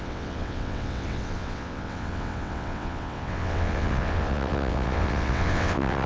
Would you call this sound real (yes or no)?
no